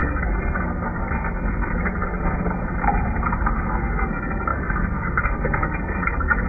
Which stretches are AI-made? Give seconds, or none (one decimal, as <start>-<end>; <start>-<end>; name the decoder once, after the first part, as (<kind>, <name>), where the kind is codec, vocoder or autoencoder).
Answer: 0.0-2.6 (codec, SNAC); 3.6-6.5